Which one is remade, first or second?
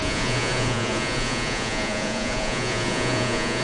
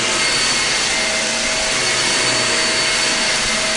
first